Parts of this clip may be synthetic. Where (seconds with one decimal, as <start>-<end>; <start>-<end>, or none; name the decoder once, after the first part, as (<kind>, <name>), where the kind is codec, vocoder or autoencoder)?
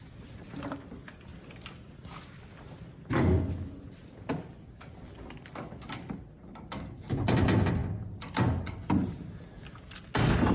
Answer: none